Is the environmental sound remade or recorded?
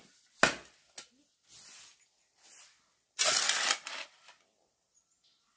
recorded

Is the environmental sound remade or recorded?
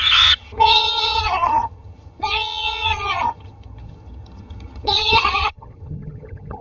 remade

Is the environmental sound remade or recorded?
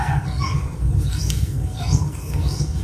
remade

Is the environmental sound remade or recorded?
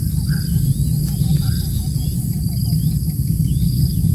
recorded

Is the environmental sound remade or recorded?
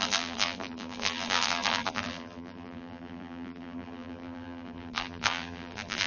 remade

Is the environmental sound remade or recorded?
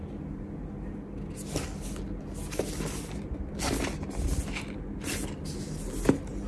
recorded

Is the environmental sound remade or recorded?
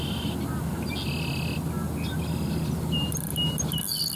recorded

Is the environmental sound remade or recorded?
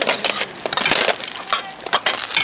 recorded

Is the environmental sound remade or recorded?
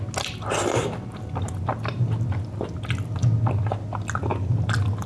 recorded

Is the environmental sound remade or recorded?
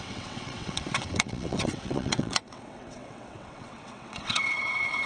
remade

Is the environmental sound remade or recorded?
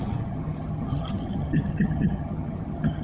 remade